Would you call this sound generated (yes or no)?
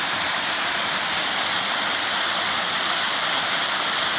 no